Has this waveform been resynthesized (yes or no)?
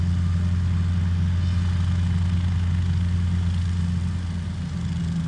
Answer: no